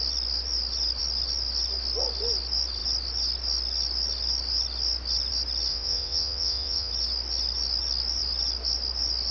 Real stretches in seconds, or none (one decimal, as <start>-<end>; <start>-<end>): 0.0-5.7; 6.9-9.3